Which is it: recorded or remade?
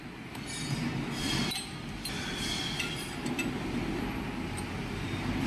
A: recorded